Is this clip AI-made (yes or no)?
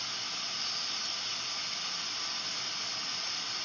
no